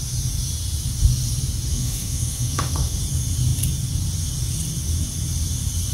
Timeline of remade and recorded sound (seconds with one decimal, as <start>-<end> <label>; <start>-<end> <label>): 0.0-1.7 recorded; 1.7-3.0 remade; 3.0-5.9 recorded

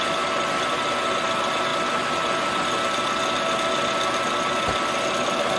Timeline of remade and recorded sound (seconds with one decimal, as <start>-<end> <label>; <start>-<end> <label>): 0.0-5.6 recorded

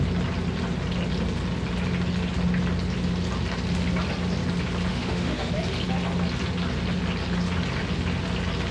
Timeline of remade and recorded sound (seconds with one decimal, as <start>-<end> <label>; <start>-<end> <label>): 0.0-4.9 recorded; 4.9-5.5 remade; 5.5-8.7 recorded